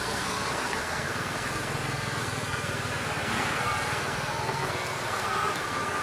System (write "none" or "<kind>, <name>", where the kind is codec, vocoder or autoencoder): codec, SNAC